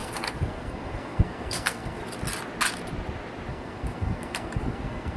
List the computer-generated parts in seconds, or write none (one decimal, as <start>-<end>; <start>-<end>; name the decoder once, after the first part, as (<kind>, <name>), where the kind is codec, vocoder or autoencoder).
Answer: 0.0-2.0 (codec, SNAC); 3.5-5.2